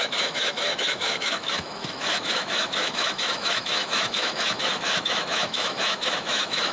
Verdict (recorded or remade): remade